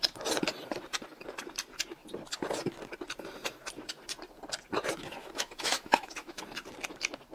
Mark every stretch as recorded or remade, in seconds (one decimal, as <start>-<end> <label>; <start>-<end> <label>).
0.0-5.2 recorded; 5.2-6.4 remade; 6.4-7.3 recorded